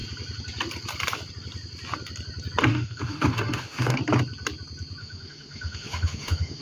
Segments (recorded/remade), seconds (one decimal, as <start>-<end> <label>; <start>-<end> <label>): 0.0-2.7 recorded; 2.7-4.0 remade; 4.0-5.0 recorded; 5.0-6.6 remade